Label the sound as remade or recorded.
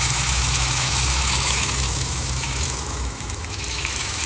remade